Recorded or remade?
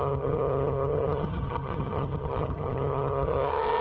remade